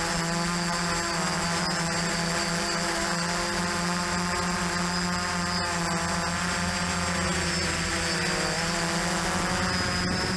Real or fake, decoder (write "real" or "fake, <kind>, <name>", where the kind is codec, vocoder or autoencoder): real